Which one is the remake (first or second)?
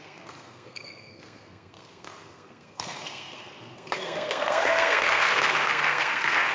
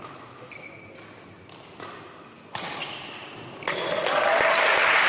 first